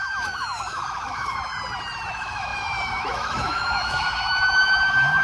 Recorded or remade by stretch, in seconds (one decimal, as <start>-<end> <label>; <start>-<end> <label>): 0.0-1.5 remade; 1.5-2.1 recorded; 2.1-5.2 remade